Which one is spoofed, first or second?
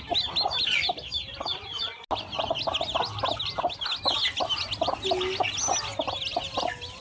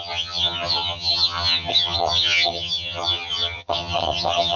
second